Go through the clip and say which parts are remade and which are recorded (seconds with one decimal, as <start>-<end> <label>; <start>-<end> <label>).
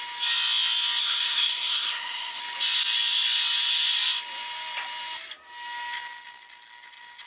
0.0-1.0 recorded; 1.0-2.4 remade; 2.4-7.3 recorded